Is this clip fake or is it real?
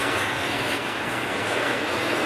fake